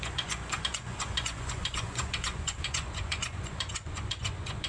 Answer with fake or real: fake